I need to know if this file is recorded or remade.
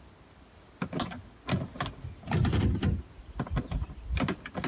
recorded